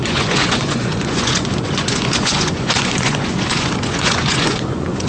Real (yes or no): no